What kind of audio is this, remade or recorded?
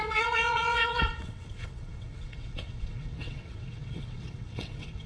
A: remade